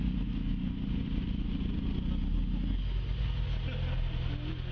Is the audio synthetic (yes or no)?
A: no